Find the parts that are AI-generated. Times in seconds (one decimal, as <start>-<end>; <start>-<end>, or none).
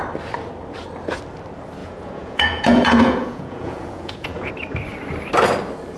1.8-4.5